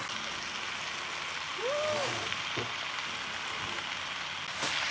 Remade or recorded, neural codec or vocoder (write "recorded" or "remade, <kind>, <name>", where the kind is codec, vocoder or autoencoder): recorded